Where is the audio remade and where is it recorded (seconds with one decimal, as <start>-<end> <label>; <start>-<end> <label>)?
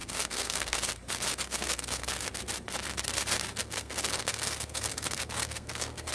0.0-0.9 remade; 0.9-1.3 recorded; 1.3-2.1 remade; 2.1-3.6 recorded; 3.6-6.1 remade